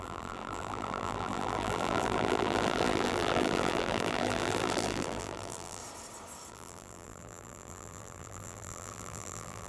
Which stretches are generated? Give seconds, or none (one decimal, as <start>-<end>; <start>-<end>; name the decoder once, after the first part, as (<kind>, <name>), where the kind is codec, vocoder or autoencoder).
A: 0.0-5.8 (vocoder, BigVGAN v2); 6.5-9.7